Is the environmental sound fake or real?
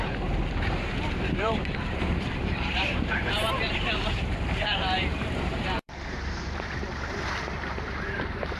fake